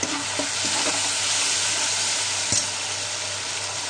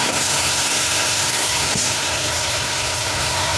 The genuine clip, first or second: first